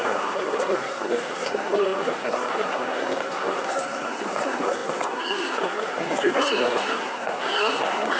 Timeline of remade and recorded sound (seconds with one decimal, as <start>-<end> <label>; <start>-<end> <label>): 0.0-8.2 remade